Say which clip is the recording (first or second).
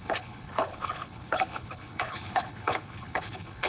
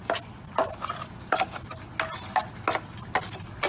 second